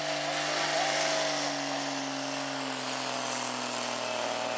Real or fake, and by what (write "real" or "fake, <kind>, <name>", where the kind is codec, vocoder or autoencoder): real